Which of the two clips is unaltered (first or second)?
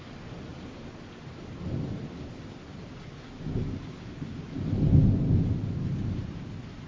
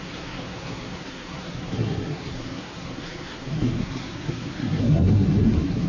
first